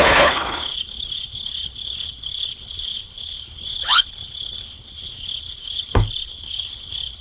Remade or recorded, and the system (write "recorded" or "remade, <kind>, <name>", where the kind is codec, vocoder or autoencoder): remade, codec, HILCodec